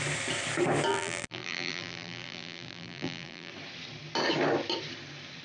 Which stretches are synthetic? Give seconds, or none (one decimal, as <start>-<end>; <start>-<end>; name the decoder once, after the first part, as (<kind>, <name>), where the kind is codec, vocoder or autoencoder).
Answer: 0.9-3.5 (vocoder, BigVGAN v2)